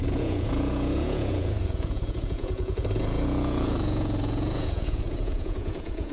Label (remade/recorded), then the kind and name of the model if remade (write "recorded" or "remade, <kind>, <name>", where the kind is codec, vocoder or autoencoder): remade, vocoder, Vocos